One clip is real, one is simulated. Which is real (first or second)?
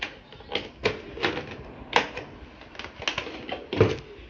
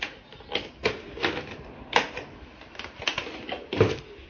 first